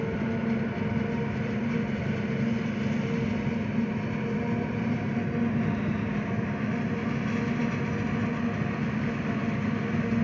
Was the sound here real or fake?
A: real